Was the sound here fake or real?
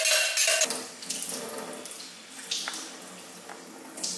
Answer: real